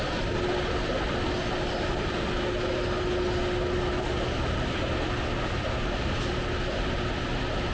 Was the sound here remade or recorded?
recorded